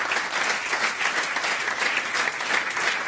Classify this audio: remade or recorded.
recorded